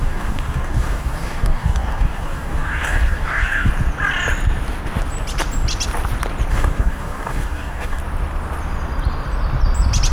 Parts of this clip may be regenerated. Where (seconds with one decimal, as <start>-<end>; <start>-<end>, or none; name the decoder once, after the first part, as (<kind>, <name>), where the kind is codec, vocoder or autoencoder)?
0.0-3.7 (codec, DAC); 6.5-8.0